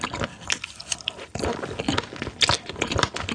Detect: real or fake real